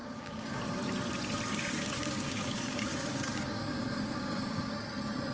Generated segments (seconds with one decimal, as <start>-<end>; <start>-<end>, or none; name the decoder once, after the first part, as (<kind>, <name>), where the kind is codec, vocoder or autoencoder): 0.0-0.6 (codec, DAC); 1.5-4.7